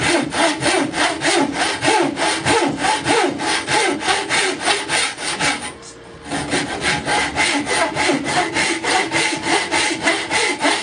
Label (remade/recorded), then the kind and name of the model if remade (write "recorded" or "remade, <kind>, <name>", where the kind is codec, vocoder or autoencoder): recorded